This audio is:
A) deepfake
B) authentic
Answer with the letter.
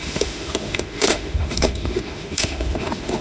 A